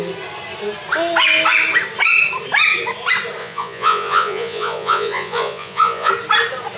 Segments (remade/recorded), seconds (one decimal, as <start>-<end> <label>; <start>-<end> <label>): 0.0-3.4 recorded; 3.4-6.1 remade; 6.1-6.8 recorded